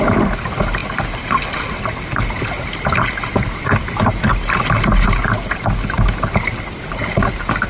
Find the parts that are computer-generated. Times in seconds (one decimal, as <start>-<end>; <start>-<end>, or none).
none